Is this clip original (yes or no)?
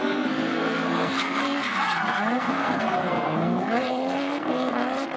no